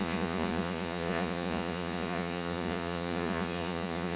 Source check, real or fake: fake